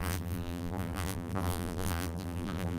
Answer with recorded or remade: remade